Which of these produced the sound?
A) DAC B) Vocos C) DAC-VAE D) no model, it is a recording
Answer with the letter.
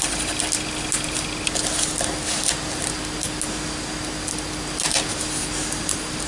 D